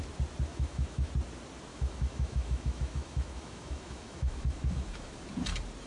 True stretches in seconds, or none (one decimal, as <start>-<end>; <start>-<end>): 0.0-0.5; 1.1-1.7; 5.2-5.9